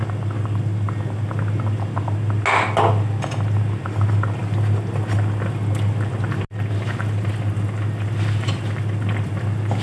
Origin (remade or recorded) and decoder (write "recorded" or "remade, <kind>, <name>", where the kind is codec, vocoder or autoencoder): recorded